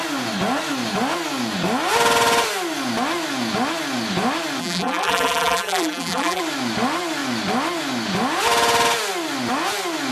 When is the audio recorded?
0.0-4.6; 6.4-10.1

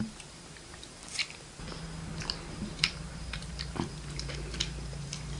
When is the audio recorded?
1.2-2.5

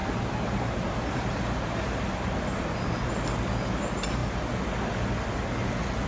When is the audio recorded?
1.9-6.1

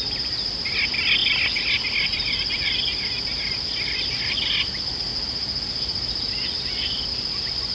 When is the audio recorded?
0.0-7.7

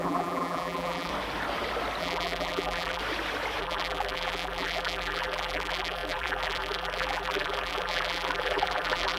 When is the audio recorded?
1.1-2.0; 3.0-3.6

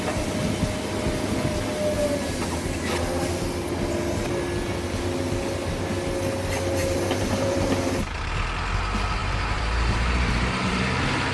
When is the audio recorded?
0.0-6.8; 8.3-9.2; 10.8-11.3

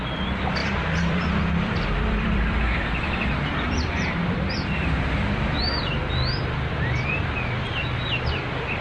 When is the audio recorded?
6.0-8.0